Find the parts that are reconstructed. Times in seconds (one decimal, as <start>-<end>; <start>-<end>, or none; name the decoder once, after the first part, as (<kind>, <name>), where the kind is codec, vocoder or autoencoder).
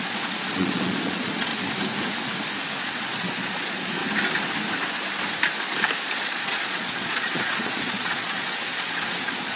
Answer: 0.0-1.5 (vocoder, Vocos); 2.8-4.0; 6.1-9.6